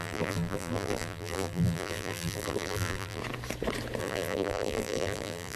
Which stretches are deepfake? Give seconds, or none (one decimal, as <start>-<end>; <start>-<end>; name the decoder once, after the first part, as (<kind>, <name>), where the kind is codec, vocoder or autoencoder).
0.0-3.2 (vocoder, BigVGAN v2); 4.0-5.6